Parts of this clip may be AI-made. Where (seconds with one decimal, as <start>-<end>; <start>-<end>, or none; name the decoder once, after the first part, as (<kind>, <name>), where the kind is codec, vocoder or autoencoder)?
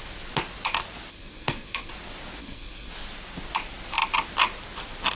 1.1-1.9 (codec, SNAC); 2.4-2.9